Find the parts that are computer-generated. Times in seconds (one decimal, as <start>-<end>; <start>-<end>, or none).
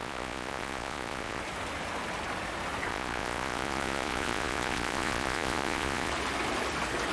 0.0-1.4; 2.9-6.1